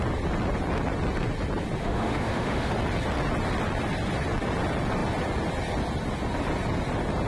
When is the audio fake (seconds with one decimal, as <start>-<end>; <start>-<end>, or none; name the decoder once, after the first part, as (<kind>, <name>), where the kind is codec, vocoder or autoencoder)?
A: 1.8-2.7 (autoencoder, DAC-VAE)